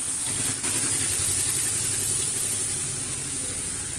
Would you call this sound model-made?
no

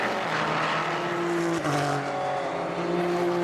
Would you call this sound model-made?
no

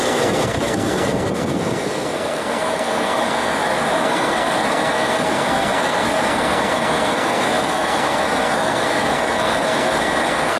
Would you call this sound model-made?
yes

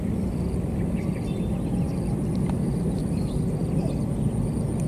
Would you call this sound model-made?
no